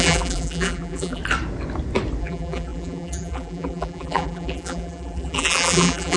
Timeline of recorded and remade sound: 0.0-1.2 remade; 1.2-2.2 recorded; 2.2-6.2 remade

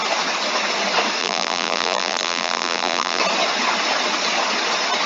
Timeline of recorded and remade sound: 0.0-1.2 recorded; 1.2-3.2 remade; 3.2-5.1 recorded

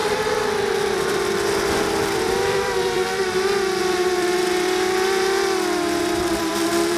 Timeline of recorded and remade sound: 0.0-3.3 remade; 3.3-3.8 recorded; 3.8-7.0 remade

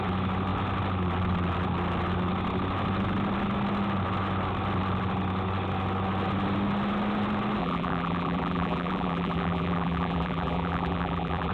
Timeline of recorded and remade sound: 0.0-7.6 recorded; 7.6-11.5 remade